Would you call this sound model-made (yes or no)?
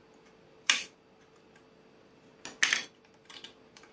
no